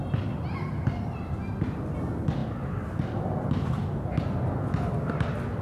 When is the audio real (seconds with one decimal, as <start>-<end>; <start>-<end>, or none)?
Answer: 0.0-5.6